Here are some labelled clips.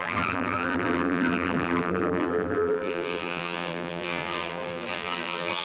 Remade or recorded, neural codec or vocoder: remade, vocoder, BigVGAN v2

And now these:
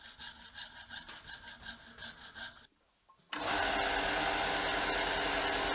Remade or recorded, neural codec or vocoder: recorded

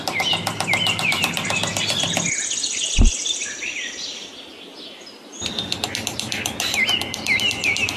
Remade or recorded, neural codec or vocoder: recorded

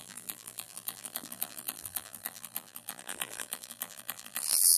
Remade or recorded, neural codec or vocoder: remade, vocoder, BigVGAN v2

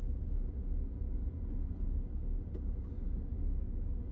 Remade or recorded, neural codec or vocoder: recorded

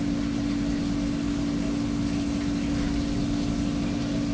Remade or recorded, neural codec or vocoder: recorded